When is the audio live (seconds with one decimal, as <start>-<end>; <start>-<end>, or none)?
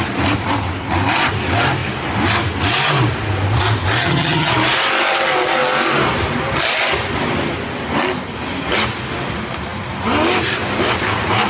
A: 0.0-4.0; 4.5-11.5